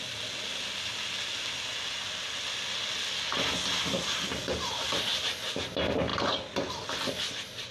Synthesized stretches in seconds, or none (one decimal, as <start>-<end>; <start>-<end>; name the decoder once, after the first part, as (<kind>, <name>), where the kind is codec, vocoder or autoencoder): none